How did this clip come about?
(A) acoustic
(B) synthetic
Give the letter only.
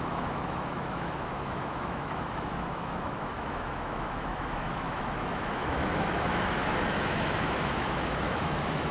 B